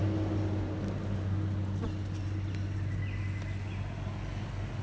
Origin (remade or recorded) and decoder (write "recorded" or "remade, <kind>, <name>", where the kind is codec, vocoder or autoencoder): recorded